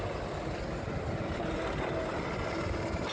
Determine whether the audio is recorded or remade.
recorded